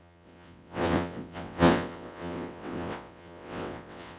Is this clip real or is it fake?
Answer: fake